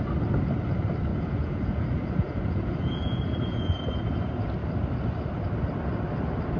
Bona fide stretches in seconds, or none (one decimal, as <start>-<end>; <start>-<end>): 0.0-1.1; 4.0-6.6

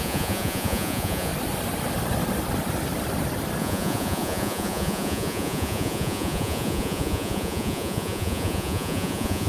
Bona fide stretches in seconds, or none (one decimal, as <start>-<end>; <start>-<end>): 1.3-3.6

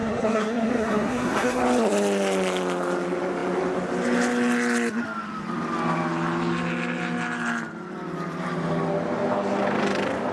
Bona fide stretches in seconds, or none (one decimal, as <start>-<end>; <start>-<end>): 1.6-10.3

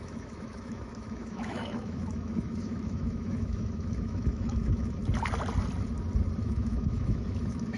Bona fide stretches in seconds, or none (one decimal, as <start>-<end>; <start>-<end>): 5.0-6.4

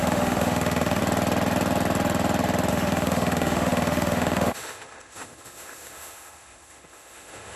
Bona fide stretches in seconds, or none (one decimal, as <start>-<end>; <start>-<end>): 1.0-2.7